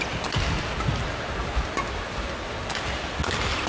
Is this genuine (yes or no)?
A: yes